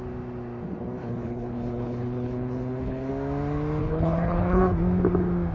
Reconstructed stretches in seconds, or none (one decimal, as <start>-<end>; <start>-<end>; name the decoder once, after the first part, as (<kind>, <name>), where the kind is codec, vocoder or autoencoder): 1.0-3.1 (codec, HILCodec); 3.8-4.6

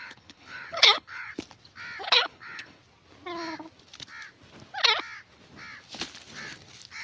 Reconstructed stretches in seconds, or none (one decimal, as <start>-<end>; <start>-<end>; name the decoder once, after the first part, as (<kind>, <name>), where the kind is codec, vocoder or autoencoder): 0.0-1.3 (codec, HILCodec); 2.0-2.8

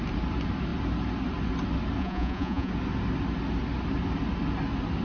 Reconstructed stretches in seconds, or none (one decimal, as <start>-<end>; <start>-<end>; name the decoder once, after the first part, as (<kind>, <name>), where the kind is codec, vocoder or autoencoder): 2.0-2.7 (vocoder, Vocos)

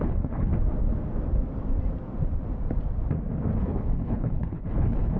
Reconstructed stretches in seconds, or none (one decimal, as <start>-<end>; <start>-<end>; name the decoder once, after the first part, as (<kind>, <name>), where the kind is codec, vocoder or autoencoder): 0.0-0.5 (codec, HILCodec); 3.6-5.2

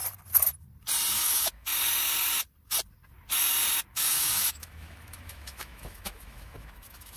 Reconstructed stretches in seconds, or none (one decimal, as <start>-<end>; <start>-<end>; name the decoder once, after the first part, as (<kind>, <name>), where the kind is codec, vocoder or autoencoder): 1.1-1.7 (autoencoder, DAC-VAE); 3.9-7.2

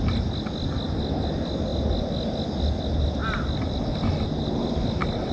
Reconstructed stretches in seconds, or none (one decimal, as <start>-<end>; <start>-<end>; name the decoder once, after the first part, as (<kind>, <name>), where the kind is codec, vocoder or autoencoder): none

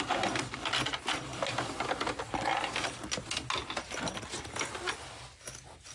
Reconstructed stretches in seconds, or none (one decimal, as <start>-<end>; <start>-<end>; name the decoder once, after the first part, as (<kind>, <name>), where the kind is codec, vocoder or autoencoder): none